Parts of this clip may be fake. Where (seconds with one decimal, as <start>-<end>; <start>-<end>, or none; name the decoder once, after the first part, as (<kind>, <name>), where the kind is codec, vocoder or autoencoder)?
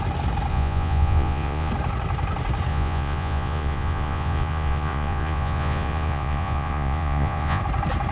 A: 0.5-1.7 (vocoder, Vocos); 2.7-7.6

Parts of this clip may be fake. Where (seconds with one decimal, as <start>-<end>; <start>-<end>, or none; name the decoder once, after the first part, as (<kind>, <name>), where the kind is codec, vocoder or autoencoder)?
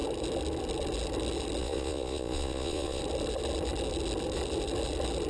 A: 1.6-3.0 (vocoder, Vocos)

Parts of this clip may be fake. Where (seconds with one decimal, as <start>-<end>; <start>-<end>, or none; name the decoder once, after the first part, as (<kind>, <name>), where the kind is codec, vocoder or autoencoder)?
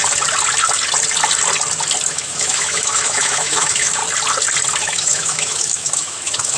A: 2.1-4.0 (autoencoder, DAC-VAE); 4.8-6.6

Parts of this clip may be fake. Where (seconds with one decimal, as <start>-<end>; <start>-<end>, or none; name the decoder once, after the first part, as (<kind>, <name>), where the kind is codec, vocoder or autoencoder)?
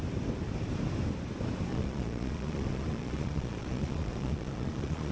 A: 1.7-5.1 (vocoder, Vocos)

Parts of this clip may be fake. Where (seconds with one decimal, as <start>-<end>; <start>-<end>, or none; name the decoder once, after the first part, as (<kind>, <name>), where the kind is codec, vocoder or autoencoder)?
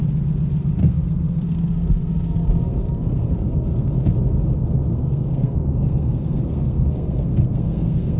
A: 0.8-3.9 (codec, SNAC); 4.9-8.2